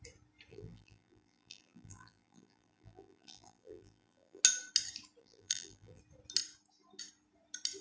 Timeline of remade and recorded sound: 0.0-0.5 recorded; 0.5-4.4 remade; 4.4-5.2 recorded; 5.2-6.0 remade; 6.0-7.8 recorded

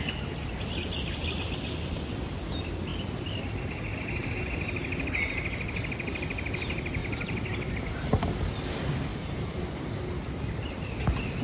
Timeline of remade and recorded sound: 0.0-7.0 recorded; 7.0-7.7 remade; 7.7-11.4 recorded

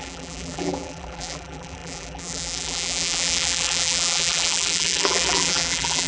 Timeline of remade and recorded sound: 0.0-6.1 remade

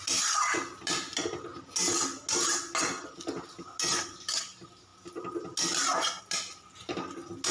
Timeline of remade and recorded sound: 0.0-7.5 recorded

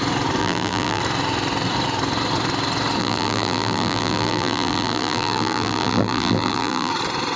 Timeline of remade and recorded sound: 0.0-0.4 recorded; 0.4-1.0 remade; 1.0-3.0 recorded; 3.0-6.9 remade; 6.9-7.4 recorded

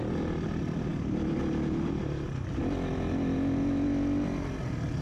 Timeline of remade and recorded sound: 0.0-5.0 recorded